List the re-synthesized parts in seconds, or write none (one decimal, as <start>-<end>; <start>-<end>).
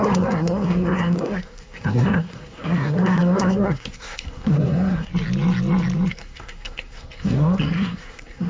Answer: 0.0-5.1; 6.1-8.5